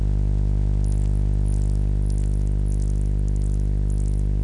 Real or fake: real